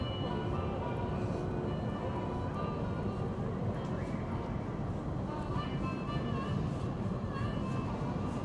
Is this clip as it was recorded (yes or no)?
yes